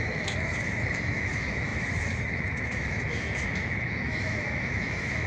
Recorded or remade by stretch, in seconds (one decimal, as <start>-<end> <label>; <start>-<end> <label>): 0.0-5.3 remade